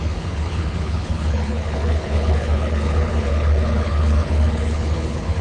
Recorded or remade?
remade